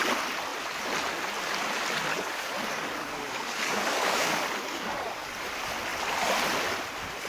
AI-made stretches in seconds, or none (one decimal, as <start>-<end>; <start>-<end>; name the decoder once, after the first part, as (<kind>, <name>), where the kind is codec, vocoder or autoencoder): 2.1-5.3 (codec, DAC)